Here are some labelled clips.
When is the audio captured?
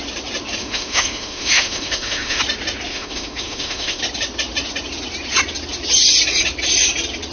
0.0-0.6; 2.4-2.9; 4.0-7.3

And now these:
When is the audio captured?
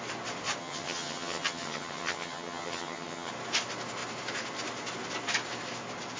0.0-0.6; 3.3-6.2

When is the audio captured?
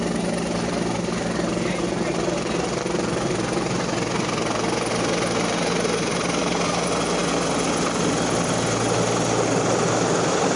0.0-10.6